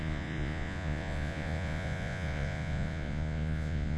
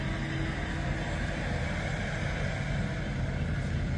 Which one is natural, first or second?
second